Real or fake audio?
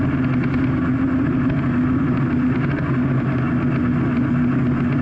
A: real